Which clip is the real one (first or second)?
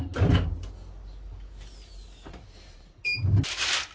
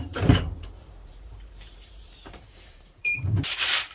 first